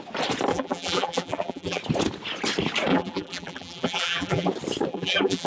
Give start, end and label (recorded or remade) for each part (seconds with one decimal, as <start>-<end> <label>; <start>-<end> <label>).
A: 0.0-0.5 recorded; 0.5-1.8 remade; 1.8-2.9 recorded; 2.9-4.5 remade; 4.5-4.9 recorded; 4.9-5.5 remade